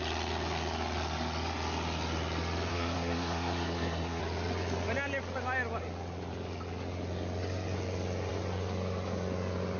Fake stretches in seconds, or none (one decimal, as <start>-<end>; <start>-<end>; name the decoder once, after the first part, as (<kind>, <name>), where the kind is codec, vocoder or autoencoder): 2.7-4.2 (codec, SNAC)